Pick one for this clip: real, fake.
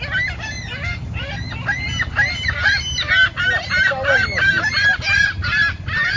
real